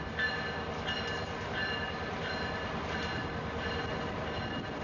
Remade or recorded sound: recorded